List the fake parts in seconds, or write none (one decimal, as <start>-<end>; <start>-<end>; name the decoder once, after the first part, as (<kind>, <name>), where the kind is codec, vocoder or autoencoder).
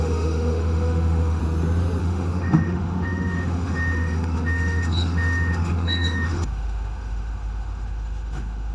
0.0-1.4 (autoencoder, DAC-VAE); 2.0-8.7